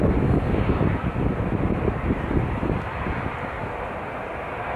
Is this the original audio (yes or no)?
yes